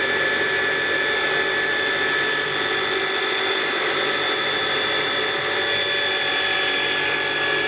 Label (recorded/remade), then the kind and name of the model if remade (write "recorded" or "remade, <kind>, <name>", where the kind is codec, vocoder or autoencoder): recorded